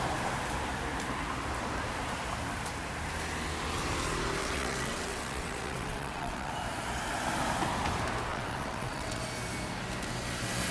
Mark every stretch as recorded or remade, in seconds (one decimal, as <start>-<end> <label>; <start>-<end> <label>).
0.0-4.4 recorded; 4.4-6.5 remade; 6.5-8.3 recorded; 8.3-9.2 remade; 9.2-10.7 recorded